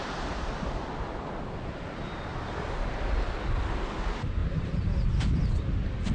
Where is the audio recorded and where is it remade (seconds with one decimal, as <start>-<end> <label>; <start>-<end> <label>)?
0.0-2.3 recorded; 2.3-3.6 remade; 3.6-4.4 recorded; 4.4-5.5 remade; 5.5-6.1 recorded